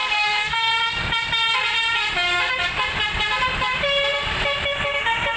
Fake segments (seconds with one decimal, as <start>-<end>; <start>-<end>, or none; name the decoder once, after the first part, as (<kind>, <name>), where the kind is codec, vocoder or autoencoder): 0.0-0.7 (codec, SNAC)